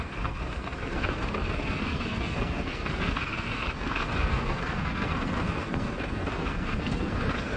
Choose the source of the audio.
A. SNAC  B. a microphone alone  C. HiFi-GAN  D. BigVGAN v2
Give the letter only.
A